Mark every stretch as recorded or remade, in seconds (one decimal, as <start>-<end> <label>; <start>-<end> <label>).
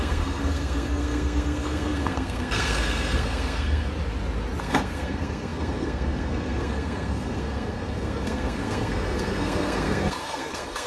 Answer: 0.0-3.9 remade; 3.9-4.6 recorded; 4.6-10.9 remade